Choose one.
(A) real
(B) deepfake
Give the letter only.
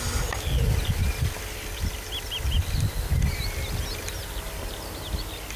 A